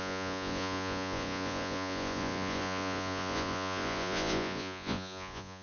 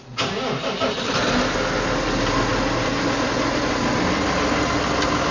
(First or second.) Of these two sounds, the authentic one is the second